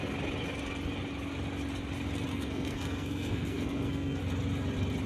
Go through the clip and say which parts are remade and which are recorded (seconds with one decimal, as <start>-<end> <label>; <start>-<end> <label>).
0.0-2.3 recorded; 2.3-4.2 remade; 4.2-5.1 recorded